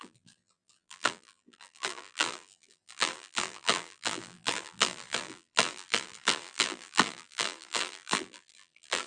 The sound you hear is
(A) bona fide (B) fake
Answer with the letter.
B